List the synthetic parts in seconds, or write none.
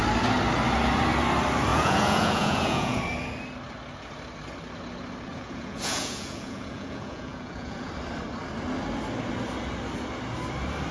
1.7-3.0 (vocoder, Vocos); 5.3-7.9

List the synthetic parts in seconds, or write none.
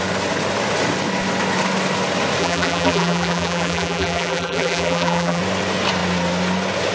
2.4-5.4 (vocoder, BigVGAN v2)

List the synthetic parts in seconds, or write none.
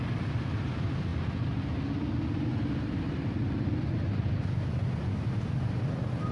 none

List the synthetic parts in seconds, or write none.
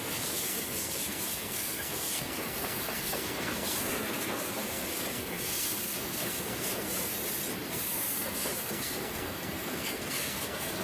0.0-7.1 (codec, SNAC); 7.7-10.8